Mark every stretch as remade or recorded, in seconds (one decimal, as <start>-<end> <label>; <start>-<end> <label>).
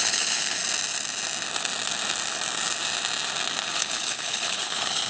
0.0-0.6 remade; 0.6-3.7 recorded; 3.7-5.1 remade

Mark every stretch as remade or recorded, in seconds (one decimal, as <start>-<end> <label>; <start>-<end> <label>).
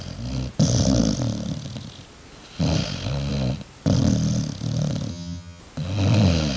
0.0-5.1 recorded; 5.1-5.6 remade; 5.6-6.6 recorded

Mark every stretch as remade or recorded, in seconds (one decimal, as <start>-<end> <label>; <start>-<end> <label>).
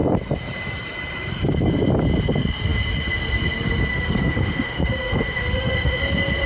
0.0-3.9 recorded; 3.9-6.0 remade; 6.0-6.5 recorded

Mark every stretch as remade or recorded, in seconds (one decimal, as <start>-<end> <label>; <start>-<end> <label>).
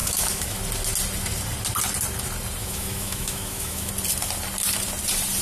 0.0-0.6 remade; 0.6-2.6 recorded; 2.6-3.9 remade; 3.9-5.4 recorded